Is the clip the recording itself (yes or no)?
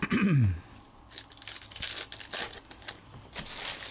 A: yes